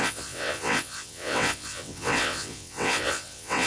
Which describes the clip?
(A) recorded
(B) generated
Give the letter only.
B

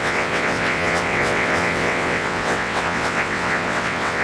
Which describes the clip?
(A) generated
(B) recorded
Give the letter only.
A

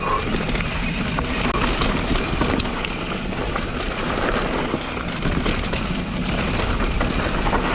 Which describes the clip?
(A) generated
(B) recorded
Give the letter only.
B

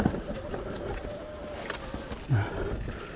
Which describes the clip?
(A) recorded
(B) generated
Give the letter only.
A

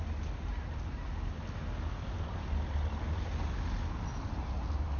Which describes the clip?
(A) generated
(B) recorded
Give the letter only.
B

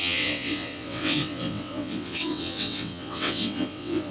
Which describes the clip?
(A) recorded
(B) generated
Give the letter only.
B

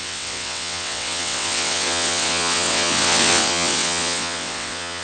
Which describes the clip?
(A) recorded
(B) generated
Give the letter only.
B